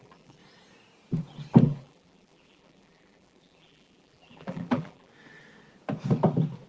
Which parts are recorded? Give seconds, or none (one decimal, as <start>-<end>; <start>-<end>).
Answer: 0.4-1.6; 5.1-6.7